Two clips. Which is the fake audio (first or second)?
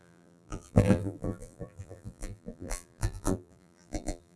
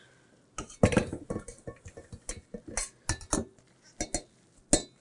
first